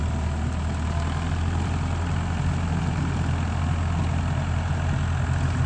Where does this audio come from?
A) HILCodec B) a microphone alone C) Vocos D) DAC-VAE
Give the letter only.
B